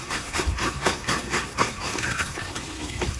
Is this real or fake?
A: fake